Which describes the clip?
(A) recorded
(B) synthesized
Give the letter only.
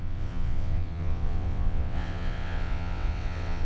B